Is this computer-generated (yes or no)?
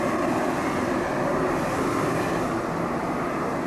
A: no